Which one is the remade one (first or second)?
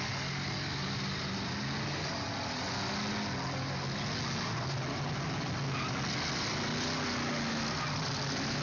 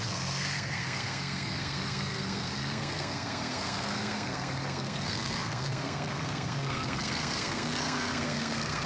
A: second